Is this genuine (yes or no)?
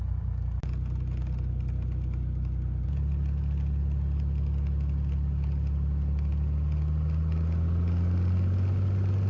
yes